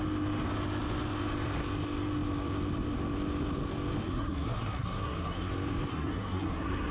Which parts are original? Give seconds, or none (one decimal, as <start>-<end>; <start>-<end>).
0.0-4.0; 5.5-5.9